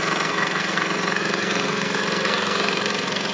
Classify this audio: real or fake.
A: fake